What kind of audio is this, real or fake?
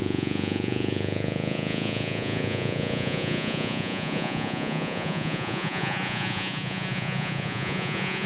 fake